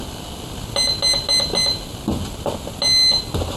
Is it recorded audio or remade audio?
recorded